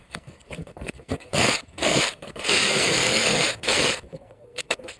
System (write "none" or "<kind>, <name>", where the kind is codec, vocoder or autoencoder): codec, SNAC